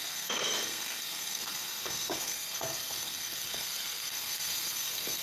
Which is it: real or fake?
fake